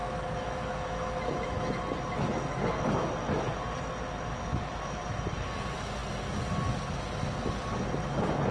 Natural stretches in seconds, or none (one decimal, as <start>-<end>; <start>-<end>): 1.7-4.5; 5.2-8.5